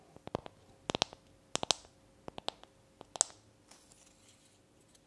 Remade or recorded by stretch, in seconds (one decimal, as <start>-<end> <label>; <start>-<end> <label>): 0.0-5.1 recorded